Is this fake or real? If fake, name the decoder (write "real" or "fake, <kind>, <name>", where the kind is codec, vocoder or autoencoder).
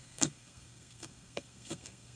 fake, codec, SNAC